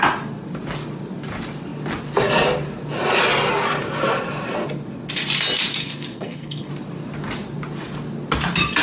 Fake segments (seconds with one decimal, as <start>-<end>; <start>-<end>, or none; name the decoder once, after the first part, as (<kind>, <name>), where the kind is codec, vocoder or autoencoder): 5.8-6.7 (codec, SNAC)